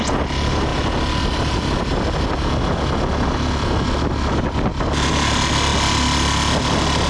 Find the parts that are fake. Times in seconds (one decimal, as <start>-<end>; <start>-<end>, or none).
none